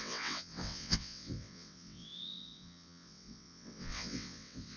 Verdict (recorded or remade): remade